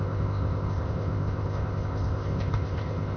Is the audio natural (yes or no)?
no